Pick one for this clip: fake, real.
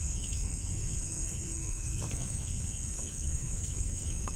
fake